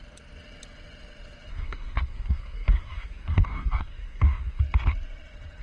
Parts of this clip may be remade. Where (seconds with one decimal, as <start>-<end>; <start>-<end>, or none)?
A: 1.5-4.6